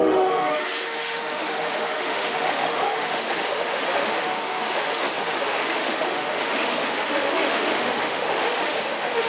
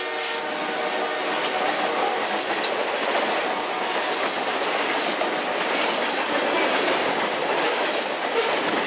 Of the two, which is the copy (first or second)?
first